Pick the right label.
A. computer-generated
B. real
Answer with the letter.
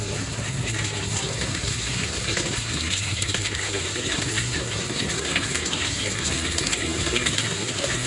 A